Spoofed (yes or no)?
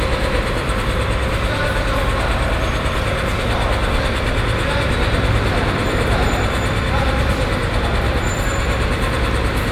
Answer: no